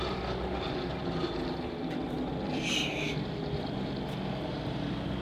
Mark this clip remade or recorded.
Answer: recorded